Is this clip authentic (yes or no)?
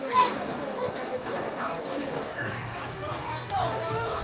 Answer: no